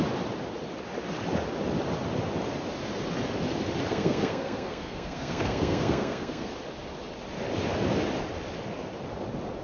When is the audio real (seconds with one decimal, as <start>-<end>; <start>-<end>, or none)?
0.0-3.9; 6.5-9.6